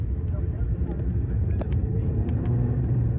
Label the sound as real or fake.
fake